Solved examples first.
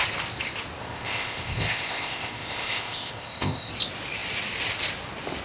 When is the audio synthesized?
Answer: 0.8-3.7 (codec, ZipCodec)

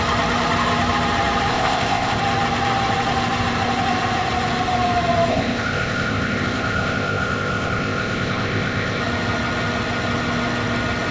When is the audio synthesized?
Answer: 1.5-2.2 (codec, ZipCodec); 5.3-9.0

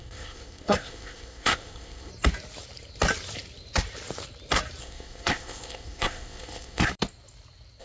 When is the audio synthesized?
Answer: 0.0-2.1 (codec, ZipCodec); 4.8-6.9

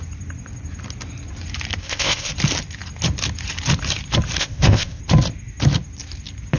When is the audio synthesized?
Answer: 1.8-2.3 (codec, ZipCodec); 4.4-5.0

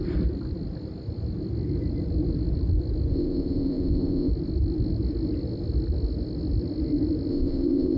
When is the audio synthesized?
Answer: 3.1-4.3 (codec, ZipCodec); 7.3-8.0

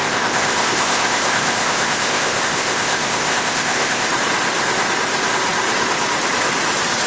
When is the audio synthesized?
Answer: 0.0-4.1 (codec, ZipCodec)